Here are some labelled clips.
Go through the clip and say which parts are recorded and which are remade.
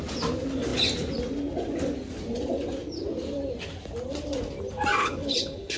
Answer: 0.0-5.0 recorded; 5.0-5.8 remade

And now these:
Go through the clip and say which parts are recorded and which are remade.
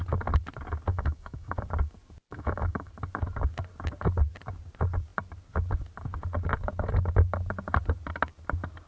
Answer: 0.0-0.9 recorded; 0.9-1.6 remade; 1.6-2.3 recorded; 2.3-2.9 remade; 2.9-8.9 recorded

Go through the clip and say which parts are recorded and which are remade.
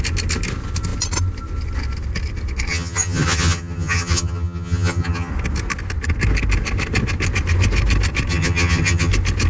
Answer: 0.0-2.7 recorded; 2.7-5.3 remade; 5.3-8.3 recorded; 8.3-9.1 remade; 9.1-9.5 recorded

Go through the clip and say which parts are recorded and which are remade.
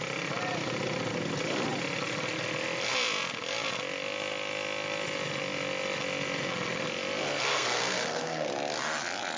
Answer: 0.0-7.5 recorded; 7.5-8.5 remade; 8.5-9.4 recorded